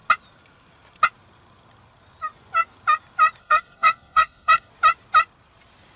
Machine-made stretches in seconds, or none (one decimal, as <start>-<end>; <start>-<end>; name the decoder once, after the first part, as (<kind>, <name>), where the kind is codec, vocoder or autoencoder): 3.4-4.7 (codec, SNAC)